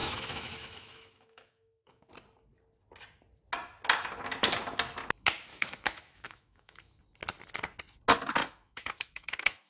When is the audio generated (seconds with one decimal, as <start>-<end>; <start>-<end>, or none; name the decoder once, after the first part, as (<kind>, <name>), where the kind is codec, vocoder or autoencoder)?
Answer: 0.0-2.1 (autoencoder, DAC-VAE); 5.5-7.0; 8.4-9.7